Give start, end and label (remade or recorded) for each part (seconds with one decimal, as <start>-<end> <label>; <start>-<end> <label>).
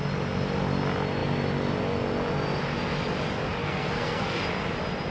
0.0-3.6 recorded; 3.6-4.4 remade; 4.4-5.1 recorded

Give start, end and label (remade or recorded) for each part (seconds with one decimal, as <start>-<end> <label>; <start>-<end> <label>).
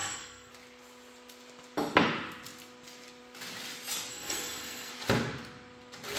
0.0-0.5 remade; 0.5-4.1 recorded; 4.1-4.9 remade; 4.9-6.2 recorded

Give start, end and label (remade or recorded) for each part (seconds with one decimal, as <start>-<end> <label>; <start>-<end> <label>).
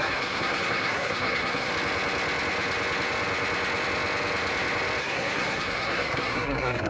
0.0-1.7 remade; 1.7-5.0 recorded; 5.0-6.9 remade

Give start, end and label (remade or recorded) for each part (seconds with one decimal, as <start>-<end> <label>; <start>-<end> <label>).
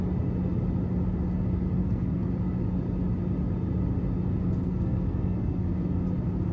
0.0-1.8 recorded; 1.8-2.3 remade; 2.3-4.4 recorded; 4.4-6.0 remade; 6.0-6.5 recorded